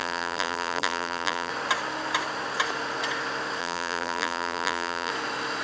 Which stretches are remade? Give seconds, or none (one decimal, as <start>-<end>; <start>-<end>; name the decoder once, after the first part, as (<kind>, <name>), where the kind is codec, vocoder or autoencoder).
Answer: 0.0-1.5 (vocoder, BigVGAN v2); 3.6-5.1